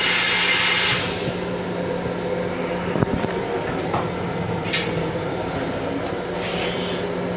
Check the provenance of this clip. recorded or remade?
recorded